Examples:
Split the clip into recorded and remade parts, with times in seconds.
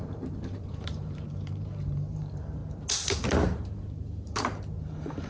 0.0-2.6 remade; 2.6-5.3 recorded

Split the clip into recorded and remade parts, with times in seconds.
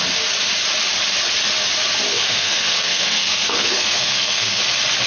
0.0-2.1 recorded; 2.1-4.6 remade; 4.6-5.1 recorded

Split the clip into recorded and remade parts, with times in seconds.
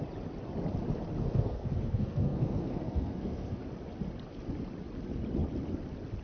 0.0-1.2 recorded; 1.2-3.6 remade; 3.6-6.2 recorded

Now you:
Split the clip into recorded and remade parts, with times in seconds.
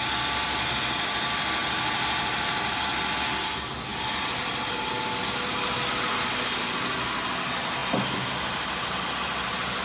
0.0-9.8 recorded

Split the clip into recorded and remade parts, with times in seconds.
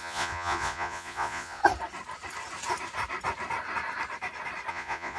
0.0-1.6 remade; 1.6-4.7 recorded; 4.7-5.2 remade